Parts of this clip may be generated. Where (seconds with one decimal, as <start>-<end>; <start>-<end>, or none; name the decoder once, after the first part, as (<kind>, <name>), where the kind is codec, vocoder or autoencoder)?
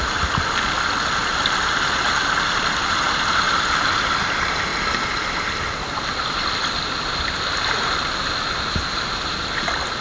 none